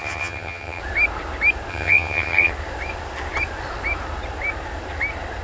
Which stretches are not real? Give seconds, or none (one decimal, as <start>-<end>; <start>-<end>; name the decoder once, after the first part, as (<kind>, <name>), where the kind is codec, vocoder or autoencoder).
0.0-0.8 (vocoder, HiFi-GAN); 1.7-2.5